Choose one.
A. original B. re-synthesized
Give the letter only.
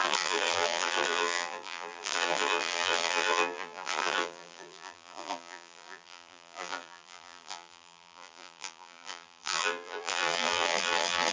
B